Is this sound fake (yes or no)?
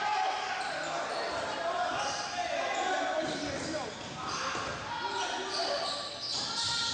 no